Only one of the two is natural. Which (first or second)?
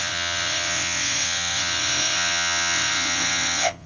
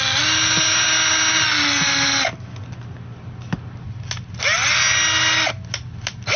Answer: second